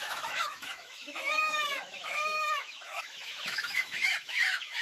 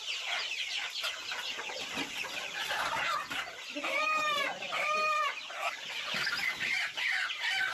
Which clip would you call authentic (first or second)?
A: second